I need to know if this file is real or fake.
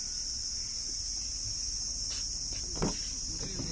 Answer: real